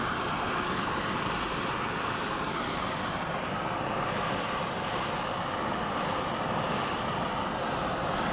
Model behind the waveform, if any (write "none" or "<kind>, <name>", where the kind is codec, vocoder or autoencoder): none